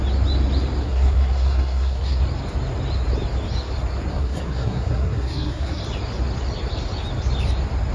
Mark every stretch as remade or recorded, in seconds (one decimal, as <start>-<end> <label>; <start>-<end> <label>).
0.0-0.8 recorded; 0.8-2.2 remade; 2.2-4.1 recorded; 4.1-5.8 remade; 5.8-7.9 recorded

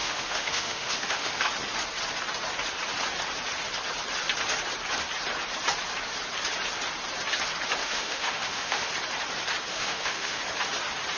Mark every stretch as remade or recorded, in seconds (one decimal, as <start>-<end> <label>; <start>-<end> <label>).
0.0-1.5 remade; 1.5-7.8 recorded; 7.8-8.9 remade; 8.9-9.7 recorded; 9.7-10.4 remade; 10.4-11.2 recorded

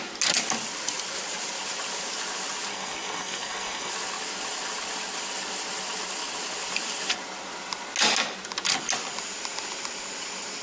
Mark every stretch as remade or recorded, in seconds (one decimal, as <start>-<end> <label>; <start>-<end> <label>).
0.0-2.7 recorded; 2.7-3.9 remade; 3.9-10.6 recorded

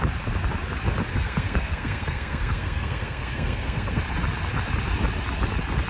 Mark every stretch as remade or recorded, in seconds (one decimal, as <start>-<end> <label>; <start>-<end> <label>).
0.0-1.1 recorded; 1.1-4.0 remade; 4.0-5.9 recorded

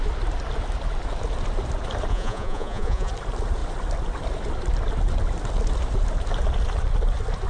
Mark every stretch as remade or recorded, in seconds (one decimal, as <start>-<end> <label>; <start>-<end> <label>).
0.0-2.1 recorded; 2.1-3.1 remade; 3.1-7.5 recorded